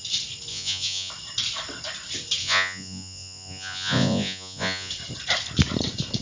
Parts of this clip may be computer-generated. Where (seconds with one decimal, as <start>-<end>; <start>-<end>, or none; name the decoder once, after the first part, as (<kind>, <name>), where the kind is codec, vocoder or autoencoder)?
0.5-1.1 (vocoder, Vocos); 2.4-4.9

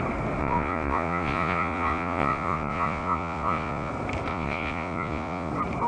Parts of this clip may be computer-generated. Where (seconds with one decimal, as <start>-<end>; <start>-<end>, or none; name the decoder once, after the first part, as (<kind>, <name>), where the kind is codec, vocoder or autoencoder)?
0.4-3.9 (vocoder, Vocos); 4.3-5.5

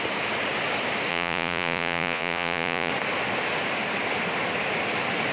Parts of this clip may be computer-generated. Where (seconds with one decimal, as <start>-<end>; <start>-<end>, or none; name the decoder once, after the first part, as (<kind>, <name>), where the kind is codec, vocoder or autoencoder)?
1.1-2.9 (vocoder, Vocos)

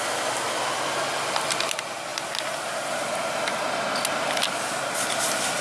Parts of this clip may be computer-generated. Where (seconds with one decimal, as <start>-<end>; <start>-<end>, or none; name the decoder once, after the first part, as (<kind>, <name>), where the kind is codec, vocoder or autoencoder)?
none

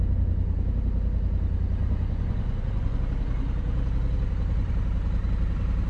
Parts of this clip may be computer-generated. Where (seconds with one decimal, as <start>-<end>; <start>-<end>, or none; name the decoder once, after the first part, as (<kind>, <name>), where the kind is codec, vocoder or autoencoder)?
1.8-3.0 (vocoder, Vocos)

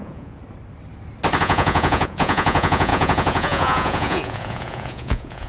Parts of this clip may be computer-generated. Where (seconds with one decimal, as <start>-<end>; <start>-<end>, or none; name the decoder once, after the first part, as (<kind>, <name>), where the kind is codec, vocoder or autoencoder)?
0.0-0.4 (vocoder, Vocos); 1.4-5.5

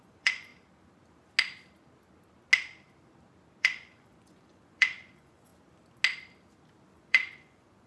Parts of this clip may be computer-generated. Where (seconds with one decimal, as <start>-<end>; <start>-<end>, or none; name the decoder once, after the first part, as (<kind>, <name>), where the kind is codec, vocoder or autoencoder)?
0.0-0.5 (vocoder, Vocos); 3.6-5.5; 6.9-7.9